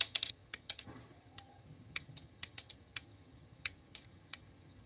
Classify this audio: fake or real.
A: fake